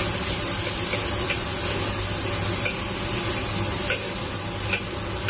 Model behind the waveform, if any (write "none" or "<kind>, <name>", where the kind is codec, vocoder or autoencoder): none